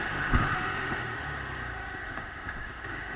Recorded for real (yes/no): no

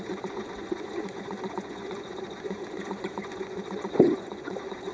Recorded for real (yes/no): no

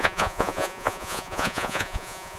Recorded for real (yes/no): no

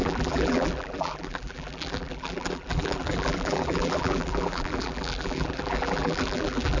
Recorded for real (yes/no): no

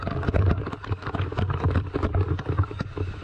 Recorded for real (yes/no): no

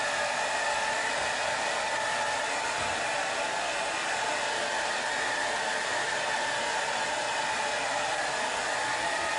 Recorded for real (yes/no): yes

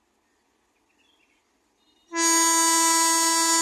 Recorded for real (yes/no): yes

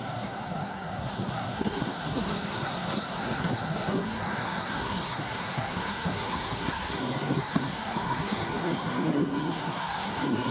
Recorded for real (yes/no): no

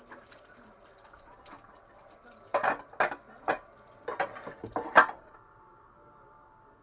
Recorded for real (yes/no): yes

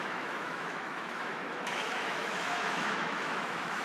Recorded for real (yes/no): no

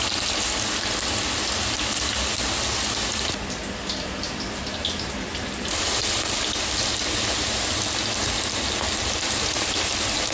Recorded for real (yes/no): yes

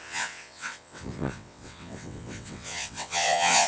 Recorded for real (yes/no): no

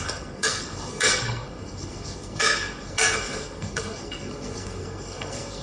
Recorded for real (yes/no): no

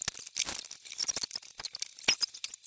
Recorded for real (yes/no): yes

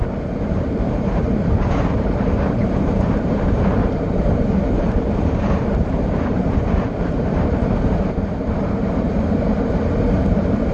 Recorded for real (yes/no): no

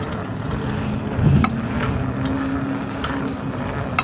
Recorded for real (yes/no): yes